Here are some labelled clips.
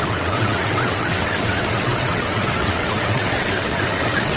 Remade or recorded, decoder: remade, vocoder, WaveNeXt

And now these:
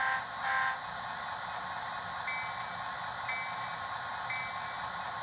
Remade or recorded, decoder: recorded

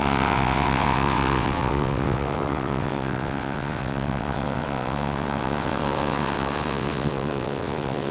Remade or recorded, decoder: remade, vocoder, WaveNeXt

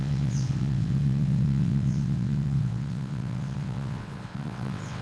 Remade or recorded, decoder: remade, vocoder, WaveNeXt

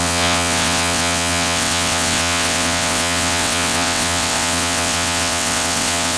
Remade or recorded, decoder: remade, vocoder, WaveNeXt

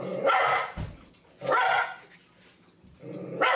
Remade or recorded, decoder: recorded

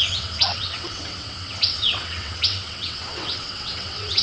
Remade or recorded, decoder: remade, vocoder, WaveNeXt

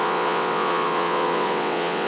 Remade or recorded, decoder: remade, vocoder, WaveNeXt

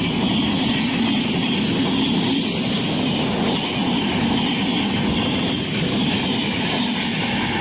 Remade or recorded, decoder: recorded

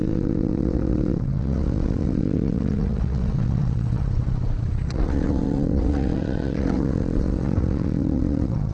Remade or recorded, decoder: remade, vocoder, WaveNeXt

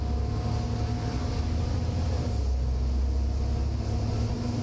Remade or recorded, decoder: recorded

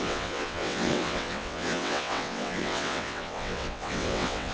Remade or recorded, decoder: remade, vocoder, WaveNeXt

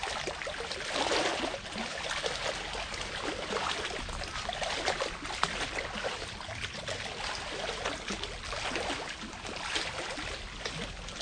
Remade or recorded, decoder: recorded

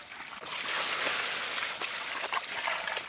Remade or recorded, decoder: recorded